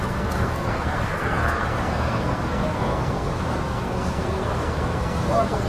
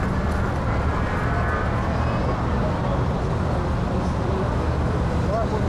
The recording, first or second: second